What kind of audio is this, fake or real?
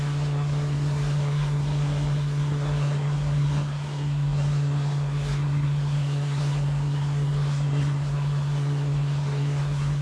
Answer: fake